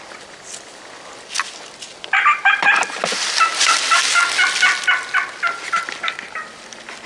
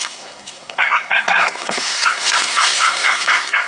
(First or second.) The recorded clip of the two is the first